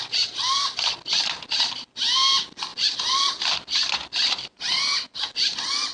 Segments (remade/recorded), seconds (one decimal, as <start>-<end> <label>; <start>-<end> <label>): 0.0-2.7 recorded; 2.7-4.8 remade; 4.8-5.9 recorded